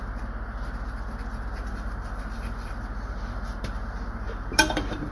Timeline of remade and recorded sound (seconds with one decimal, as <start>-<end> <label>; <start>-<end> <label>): 0.0-1.7 recorded; 1.7-5.1 remade